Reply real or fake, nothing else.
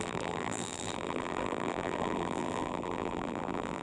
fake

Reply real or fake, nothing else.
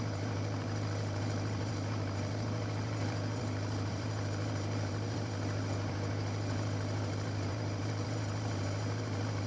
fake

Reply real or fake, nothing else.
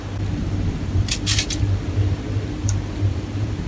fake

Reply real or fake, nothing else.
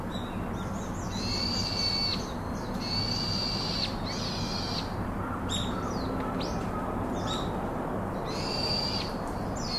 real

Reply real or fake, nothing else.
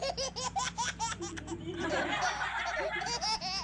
real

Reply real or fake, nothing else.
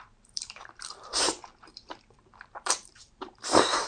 fake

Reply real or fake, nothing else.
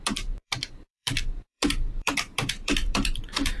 fake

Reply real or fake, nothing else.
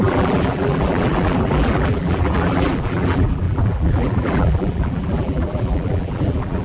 fake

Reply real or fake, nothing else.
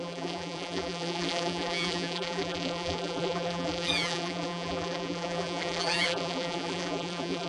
fake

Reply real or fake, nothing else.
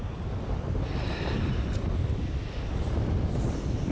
real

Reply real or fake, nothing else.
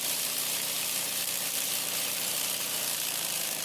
fake